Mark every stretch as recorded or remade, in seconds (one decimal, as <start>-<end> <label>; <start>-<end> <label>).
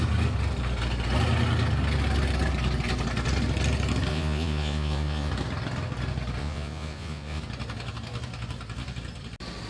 0.0-4.1 recorded; 4.1-5.3 remade; 5.3-6.4 recorded; 6.4-7.4 remade; 7.4-9.7 recorded